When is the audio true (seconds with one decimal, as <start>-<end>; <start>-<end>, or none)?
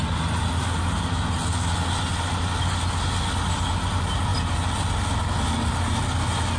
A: 0.0-6.6